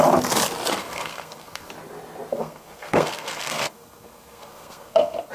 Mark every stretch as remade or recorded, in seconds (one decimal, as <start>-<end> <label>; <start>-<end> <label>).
0.0-0.8 recorded; 0.8-1.7 remade; 1.7-2.3 recorded; 2.3-5.3 remade